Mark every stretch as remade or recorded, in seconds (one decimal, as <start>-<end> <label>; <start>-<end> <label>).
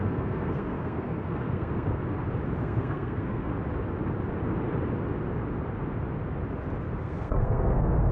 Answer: 0.0-2.0 remade; 2.0-2.6 recorded; 2.6-3.5 remade; 3.5-7.0 recorded; 7.0-8.1 remade